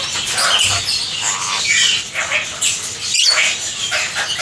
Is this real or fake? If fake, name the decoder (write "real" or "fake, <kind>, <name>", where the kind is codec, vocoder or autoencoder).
real